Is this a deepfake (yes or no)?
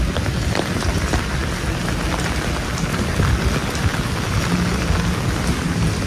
no